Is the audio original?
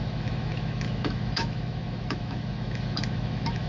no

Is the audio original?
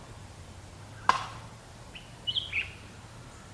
yes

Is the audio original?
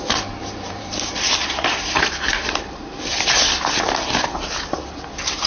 no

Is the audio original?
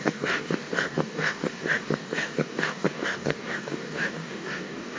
no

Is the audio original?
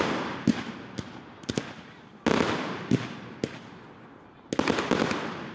yes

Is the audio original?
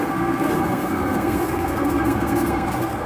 no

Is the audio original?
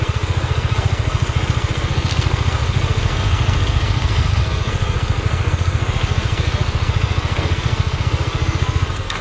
no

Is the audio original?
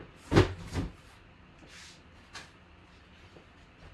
yes